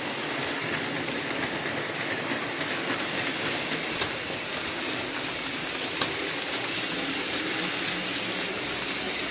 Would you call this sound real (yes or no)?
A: yes